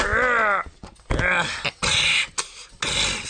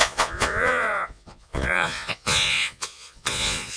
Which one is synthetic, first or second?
second